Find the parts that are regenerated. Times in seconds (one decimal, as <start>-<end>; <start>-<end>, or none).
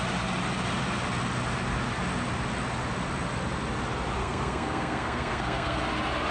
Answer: 4.2-5.8